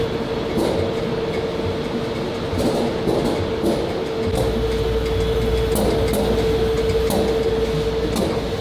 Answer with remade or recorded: recorded